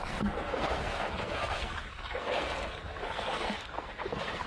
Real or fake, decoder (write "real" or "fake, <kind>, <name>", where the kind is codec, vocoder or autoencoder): fake, codec, SNAC